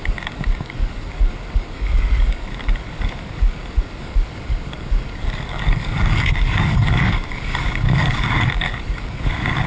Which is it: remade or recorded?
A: remade